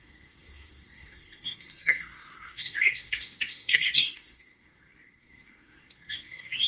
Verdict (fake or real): fake